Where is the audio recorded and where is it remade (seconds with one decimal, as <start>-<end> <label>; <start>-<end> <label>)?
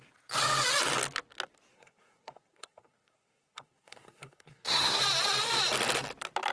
0.0-1.7 recorded; 1.7-5.0 remade; 5.0-6.5 recorded